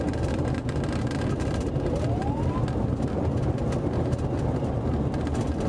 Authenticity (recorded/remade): recorded